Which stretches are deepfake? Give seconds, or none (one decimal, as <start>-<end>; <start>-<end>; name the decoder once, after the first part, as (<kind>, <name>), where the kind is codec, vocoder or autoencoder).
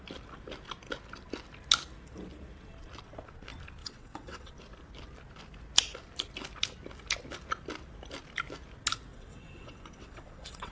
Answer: 3.8-4.5 (vocoder, WaveNeXt); 9.1-10.7